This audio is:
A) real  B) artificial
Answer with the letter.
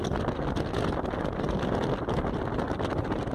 A